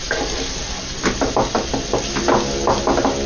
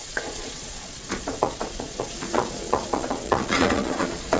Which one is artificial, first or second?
second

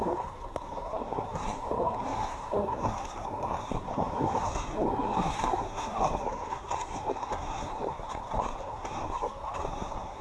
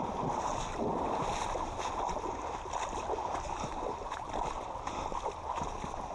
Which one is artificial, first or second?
first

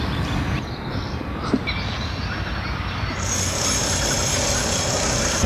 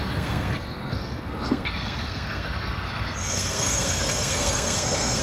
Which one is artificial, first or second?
second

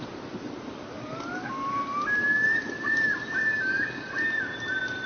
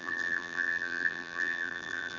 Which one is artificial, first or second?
second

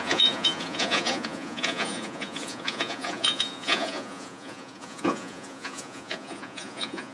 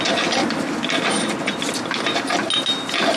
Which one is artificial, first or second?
first